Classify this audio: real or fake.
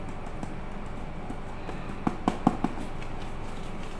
real